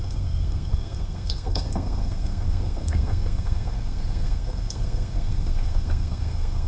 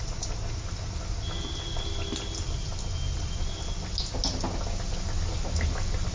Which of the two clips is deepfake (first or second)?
first